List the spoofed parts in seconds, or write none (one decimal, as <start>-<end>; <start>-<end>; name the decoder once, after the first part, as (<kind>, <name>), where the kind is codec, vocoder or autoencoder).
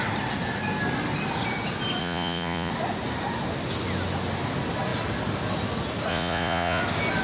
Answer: 2.0-2.7 (vocoder, Vocos); 6.1-6.8